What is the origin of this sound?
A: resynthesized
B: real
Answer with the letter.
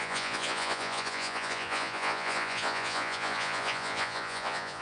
A